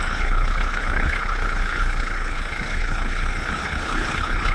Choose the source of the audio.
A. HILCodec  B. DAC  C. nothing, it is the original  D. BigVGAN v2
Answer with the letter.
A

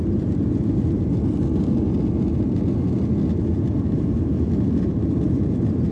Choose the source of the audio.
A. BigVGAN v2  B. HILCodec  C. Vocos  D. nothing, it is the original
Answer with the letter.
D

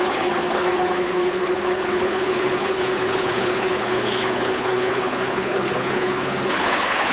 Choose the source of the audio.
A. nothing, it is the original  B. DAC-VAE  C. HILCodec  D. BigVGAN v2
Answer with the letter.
C